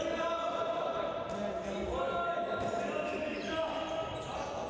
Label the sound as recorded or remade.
remade